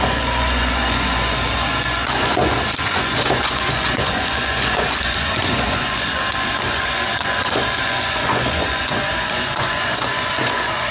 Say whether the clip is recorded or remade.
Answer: remade